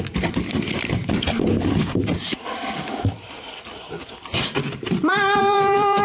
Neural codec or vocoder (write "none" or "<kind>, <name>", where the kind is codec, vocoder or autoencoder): vocoder, BigVGAN v2